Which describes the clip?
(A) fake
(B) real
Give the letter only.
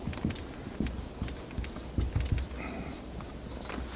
B